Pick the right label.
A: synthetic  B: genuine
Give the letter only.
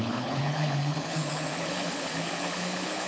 A